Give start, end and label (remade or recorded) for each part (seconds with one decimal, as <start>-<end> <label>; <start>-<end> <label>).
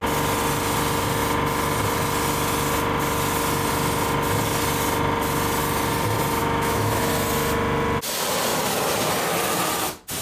0.0-6.4 recorded; 6.4-7.1 remade; 7.1-10.2 recorded